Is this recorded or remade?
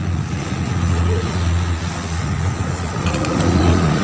remade